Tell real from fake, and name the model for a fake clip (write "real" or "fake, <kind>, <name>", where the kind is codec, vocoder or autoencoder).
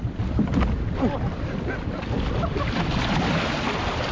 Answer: real